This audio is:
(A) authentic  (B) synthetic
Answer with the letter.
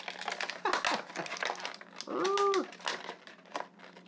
A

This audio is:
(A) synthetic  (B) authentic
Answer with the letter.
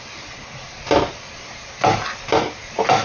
B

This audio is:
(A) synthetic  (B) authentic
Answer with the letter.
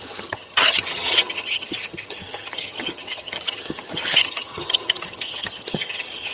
A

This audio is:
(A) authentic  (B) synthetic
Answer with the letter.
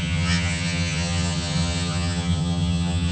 B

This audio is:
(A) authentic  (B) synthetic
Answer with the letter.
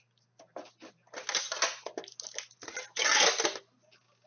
A